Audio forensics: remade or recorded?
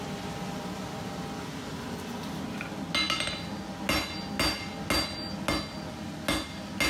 recorded